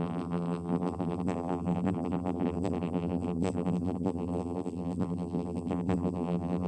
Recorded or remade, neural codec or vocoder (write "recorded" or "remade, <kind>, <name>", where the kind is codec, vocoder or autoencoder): remade, vocoder, BigVGAN v2